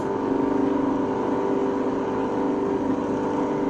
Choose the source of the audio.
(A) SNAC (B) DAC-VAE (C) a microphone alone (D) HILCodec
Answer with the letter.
C